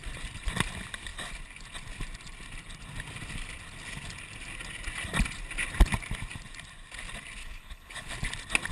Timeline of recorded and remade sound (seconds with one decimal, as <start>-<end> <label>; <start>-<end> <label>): 0.0-7.4 recorded; 7.4-8.1 remade; 8.1-8.7 recorded